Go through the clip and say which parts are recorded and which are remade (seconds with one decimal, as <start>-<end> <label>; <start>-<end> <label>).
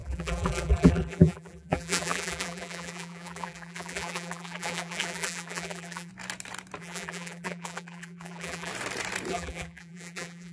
0.0-6.1 remade; 6.1-6.8 recorded; 6.8-8.7 remade; 8.7-9.3 recorded; 9.3-10.5 remade